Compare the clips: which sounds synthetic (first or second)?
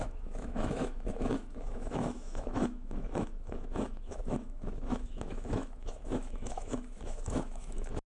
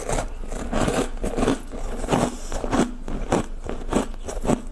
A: first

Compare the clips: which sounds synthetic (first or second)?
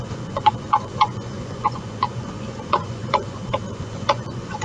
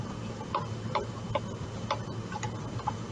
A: first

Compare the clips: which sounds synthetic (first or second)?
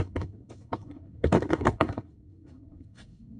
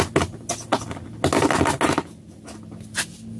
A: first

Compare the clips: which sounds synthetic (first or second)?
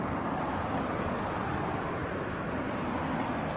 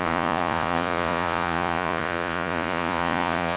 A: second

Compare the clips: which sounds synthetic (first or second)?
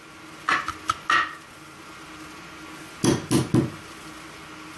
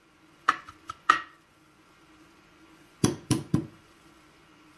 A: second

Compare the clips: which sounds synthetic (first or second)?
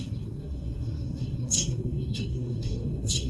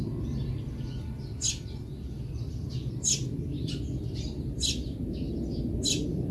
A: first